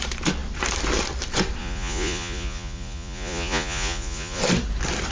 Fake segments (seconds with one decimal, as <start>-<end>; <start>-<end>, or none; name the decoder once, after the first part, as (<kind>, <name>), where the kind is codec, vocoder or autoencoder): 1.6-4.4 (vocoder, Vocos)